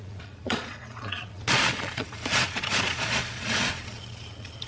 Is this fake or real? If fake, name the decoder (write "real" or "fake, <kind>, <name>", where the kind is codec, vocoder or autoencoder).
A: fake, vocoder, Vocos